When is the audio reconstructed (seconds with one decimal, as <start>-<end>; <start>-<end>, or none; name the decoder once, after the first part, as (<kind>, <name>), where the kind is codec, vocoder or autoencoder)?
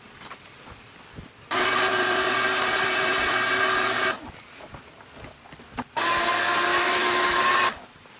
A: 6.7-7.4 (autoencoder, DAC-VAE)